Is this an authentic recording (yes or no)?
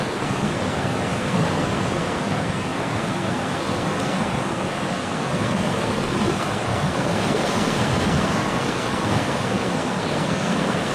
no